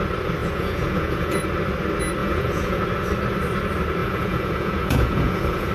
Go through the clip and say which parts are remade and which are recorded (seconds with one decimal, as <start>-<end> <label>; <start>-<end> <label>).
0.0-0.4 recorded; 0.4-1.4 remade; 1.4-2.2 recorded; 2.2-2.8 remade; 2.8-4.0 recorded; 4.0-5.7 remade